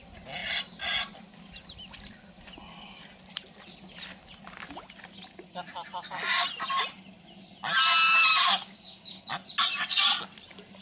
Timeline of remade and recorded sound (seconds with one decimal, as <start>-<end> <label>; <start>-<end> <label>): 0.0-8.3 recorded; 8.3-9.3 remade; 9.3-10.8 recorded